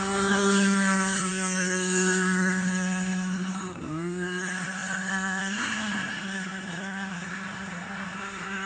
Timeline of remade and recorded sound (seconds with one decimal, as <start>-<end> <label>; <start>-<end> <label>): 0.0-8.7 remade